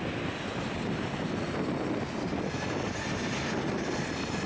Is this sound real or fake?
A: real